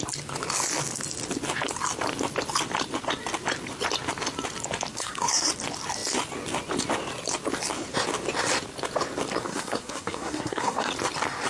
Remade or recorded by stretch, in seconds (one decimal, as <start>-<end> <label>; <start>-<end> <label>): 0.0-4.9 recorded; 4.9-5.5 remade; 5.5-9.4 recorded; 9.4-10.9 remade; 10.9-11.5 recorded